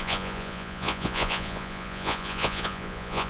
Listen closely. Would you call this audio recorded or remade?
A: remade